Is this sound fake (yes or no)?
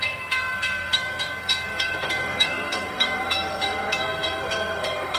yes